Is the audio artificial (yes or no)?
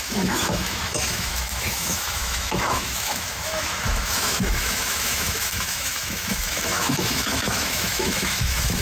yes